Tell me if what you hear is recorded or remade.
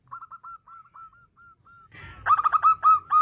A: recorded